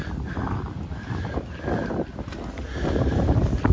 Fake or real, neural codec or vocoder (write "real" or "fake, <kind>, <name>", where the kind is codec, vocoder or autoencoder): real